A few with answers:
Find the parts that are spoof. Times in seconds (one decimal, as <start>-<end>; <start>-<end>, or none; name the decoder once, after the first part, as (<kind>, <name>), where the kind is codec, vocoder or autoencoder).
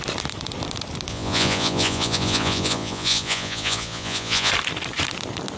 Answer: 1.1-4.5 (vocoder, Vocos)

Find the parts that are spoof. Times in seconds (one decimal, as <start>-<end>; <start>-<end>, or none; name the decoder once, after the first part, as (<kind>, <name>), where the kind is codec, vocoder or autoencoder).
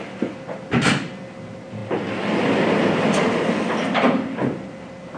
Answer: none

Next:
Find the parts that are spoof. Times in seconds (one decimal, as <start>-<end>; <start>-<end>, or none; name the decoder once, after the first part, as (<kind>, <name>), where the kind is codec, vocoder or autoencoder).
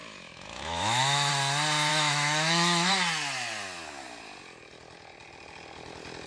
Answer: 0.0-1.3 (autoencoder, DAC-VAE); 1.9-2.9